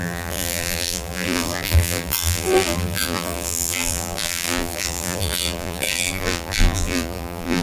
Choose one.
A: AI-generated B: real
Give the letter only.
A